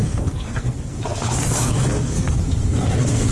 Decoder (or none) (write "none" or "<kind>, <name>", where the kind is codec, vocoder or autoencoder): codec, SNAC